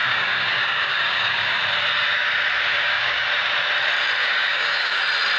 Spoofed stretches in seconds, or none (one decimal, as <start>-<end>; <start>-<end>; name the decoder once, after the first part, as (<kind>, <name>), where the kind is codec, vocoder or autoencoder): 0.0-1.6 (codec, DAC); 2.7-3.3; 4.2-5.0